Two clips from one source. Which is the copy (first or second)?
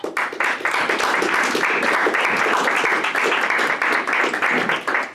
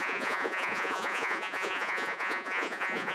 second